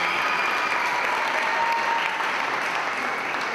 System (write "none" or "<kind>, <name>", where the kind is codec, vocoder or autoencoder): none